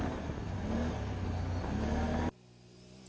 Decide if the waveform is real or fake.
real